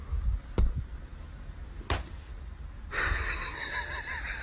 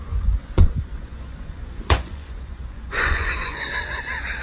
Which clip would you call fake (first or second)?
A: second